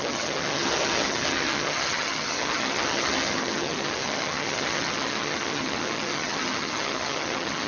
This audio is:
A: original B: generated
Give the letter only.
B